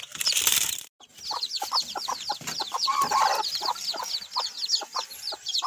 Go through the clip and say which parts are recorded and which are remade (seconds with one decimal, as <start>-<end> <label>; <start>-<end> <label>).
0.0-1.1 recorded; 1.1-4.5 remade; 4.5-5.7 recorded